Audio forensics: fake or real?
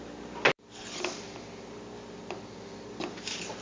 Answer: real